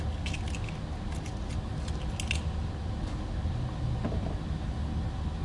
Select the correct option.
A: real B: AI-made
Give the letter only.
A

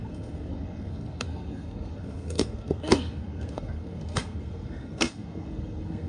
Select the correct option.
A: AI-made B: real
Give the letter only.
A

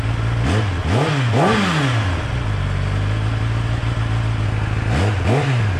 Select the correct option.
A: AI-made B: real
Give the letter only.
B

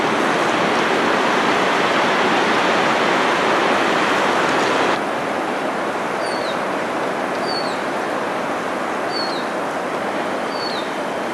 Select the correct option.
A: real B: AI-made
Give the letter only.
A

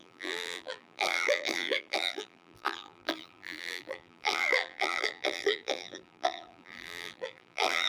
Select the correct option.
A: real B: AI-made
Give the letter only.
B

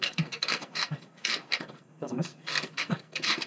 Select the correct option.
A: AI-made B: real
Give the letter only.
A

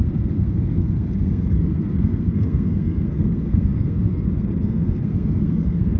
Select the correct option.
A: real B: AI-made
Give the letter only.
B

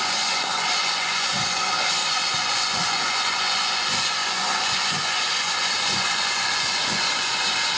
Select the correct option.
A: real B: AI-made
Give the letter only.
B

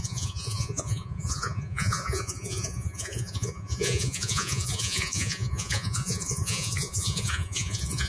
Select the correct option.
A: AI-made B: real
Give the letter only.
A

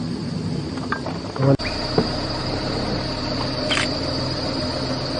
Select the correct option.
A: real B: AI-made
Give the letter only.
A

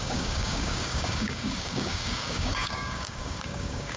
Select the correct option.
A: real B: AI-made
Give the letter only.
B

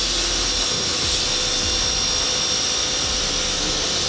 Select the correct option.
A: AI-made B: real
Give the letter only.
B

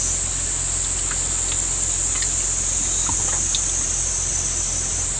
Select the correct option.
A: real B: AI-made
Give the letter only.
A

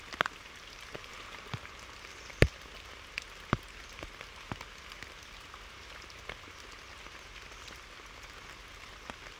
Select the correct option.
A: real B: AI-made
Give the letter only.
A